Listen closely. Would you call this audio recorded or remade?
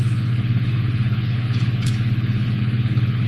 remade